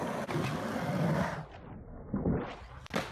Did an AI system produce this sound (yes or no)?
no